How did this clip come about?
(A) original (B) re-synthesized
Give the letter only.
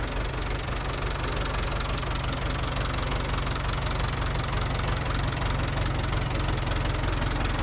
A